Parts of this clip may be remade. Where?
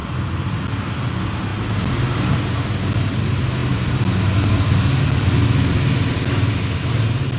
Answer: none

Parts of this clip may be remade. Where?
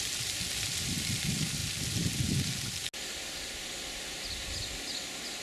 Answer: none